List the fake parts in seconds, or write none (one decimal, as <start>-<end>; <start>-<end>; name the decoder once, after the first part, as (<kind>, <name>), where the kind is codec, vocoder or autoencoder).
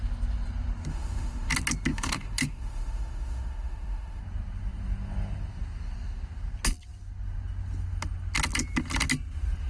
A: 0.9-1.5 (autoencoder, DAC-VAE); 1.9-4.2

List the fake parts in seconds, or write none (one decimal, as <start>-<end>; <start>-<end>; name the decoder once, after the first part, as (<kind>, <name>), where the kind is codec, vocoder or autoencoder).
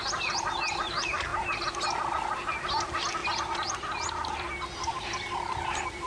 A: none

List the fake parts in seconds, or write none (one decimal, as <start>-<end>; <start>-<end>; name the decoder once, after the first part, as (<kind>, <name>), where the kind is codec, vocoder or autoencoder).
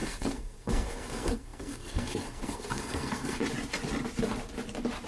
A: 0.0-3.4 (codec, SNAC)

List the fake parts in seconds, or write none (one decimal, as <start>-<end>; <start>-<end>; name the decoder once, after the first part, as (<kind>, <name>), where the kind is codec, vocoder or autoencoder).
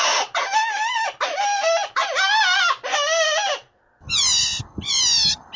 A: none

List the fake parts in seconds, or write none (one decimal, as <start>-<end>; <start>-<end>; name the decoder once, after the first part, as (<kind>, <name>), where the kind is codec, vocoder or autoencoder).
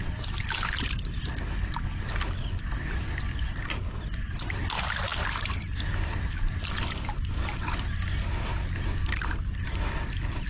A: none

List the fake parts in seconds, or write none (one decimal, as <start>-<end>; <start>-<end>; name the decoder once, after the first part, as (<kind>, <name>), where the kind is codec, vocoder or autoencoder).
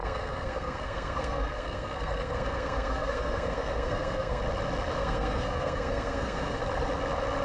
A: 0.0-4.4 (codec, SNAC); 5.0-6.6